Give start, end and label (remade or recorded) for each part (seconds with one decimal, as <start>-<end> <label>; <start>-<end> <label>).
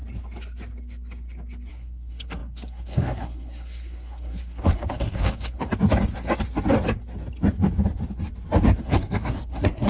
0.0-1.7 recorded; 1.7-5.7 remade; 5.7-8.8 recorded; 8.8-9.9 remade